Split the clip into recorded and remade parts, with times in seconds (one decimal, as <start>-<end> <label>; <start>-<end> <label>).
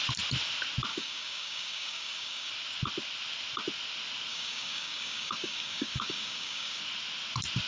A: 0.0-0.9 recorded; 0.9-2.5 remade; 2.5-4.3 recorded; 4.3-6.8 remade; 6.8-7.7 recorded